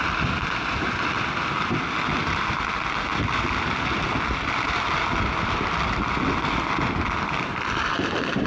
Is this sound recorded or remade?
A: recorded